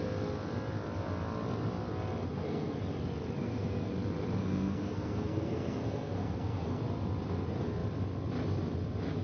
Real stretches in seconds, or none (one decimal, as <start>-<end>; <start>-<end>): 0.0-2.3; 2.8-3.4; 3.9-4.4; 6.8-9.2